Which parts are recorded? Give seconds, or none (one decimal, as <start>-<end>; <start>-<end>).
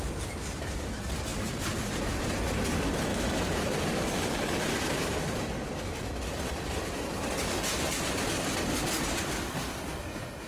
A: 0.0-1.3; 2.4-3.1; 5.5-10.5